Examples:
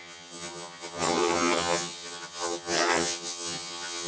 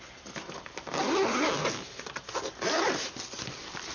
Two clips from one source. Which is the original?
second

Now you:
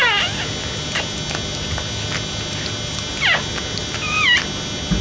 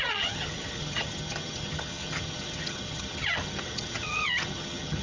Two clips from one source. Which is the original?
first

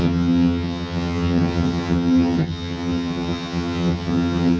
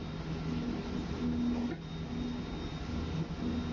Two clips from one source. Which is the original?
second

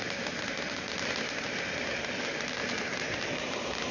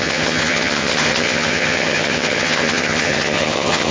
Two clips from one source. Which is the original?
first